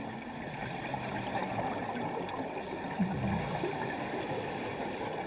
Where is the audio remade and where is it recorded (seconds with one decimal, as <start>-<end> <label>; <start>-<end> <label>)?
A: 0.0-5.3 recorded